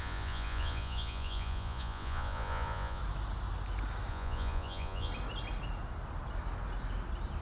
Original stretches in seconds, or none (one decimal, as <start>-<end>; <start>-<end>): 3.0-4.1; 5.1-7.4

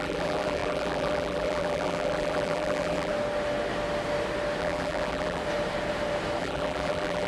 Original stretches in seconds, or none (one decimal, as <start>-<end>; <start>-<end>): 3.1-4.6; 5.4-6.4

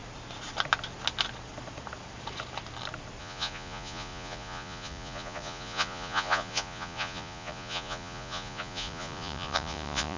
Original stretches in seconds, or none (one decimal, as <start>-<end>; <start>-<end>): 0.0-3.2